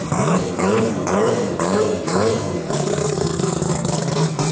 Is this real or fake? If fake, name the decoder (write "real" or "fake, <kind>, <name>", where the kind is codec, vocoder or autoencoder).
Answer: fake, codec, SNAC